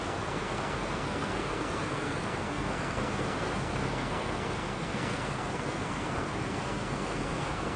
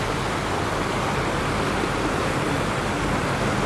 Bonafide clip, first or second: second